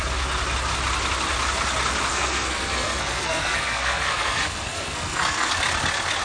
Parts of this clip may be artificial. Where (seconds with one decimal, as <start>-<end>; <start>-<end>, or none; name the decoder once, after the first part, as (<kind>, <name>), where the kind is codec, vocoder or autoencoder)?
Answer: 2.1-5.5 (codec, SNAC)